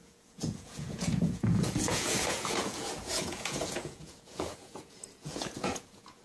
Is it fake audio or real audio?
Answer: fake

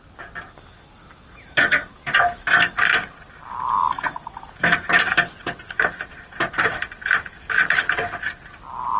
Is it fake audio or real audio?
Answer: real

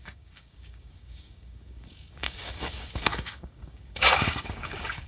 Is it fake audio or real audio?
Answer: fake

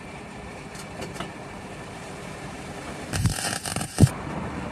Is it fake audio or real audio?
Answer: fake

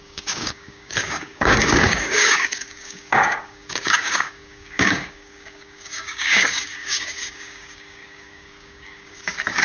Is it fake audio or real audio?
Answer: fake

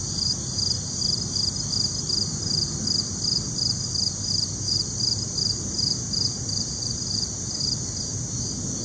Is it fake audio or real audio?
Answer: real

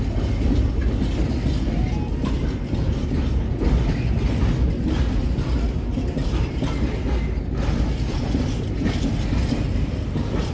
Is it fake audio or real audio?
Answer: real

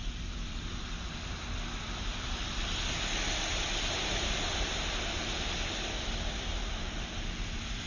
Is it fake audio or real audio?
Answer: fake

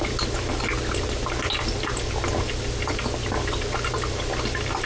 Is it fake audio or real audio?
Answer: real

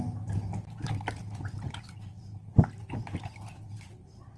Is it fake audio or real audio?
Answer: real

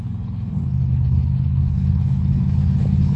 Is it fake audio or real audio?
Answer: fake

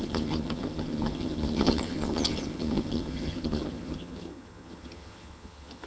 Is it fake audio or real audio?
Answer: fake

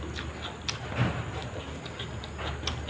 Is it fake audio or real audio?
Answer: real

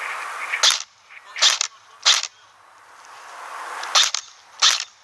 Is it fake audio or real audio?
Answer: real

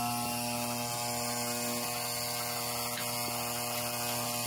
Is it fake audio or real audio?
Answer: real